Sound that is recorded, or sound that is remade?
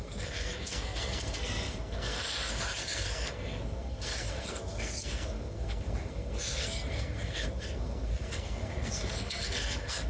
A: remade